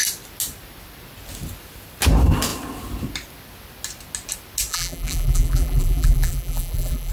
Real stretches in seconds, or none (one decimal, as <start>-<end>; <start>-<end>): 0.0-4.7